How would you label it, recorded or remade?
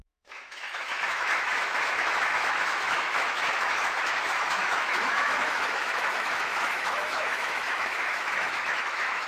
remade